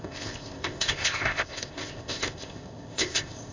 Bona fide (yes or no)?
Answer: no